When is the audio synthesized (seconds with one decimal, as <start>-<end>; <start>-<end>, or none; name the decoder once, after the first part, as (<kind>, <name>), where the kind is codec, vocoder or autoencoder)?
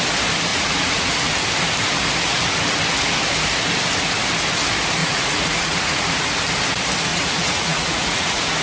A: 0.5-1.1 (vocoder, Vocos); 5.0-6.1; 7.1-8.6